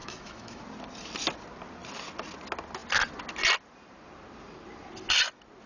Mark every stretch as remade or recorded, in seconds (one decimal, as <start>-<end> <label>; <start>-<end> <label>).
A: 0.0-0.6 remade; 0.6-5.7 recorded